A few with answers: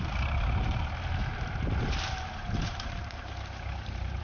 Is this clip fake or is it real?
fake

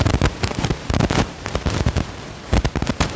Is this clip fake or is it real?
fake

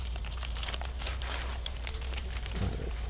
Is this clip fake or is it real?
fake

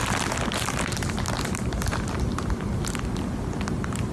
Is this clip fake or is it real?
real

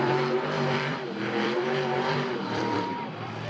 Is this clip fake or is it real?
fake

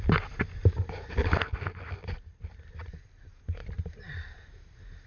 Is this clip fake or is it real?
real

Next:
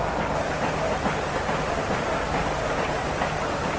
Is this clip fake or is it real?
real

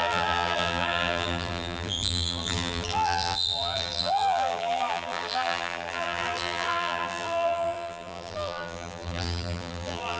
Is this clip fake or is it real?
fake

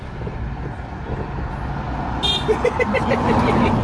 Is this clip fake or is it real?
real